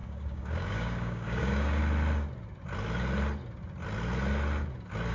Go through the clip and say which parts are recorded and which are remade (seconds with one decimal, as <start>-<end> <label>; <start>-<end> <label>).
0.0-1.8 remade; 1.8-5.1 recorded